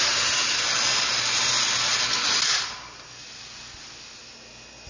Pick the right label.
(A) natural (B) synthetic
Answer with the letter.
A